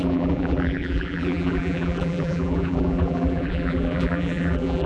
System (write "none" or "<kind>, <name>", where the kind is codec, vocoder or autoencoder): vocoder, BigVGAN v2